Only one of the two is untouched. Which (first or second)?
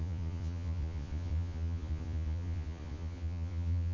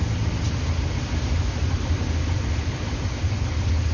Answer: second